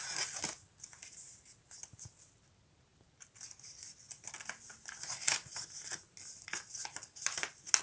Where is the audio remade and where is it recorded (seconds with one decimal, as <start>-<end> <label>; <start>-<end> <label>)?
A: 0.0-7.8 recorded